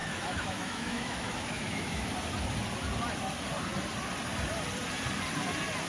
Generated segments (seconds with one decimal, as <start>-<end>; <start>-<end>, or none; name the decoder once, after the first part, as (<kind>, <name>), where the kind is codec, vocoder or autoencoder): 0.0-2.1 (autoencoder, DAC-VAE)